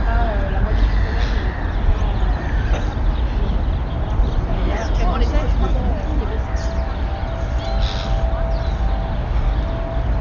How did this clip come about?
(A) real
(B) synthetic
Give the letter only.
A